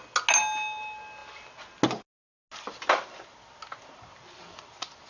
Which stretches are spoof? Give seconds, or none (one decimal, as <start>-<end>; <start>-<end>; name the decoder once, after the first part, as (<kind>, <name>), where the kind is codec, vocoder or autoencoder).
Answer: none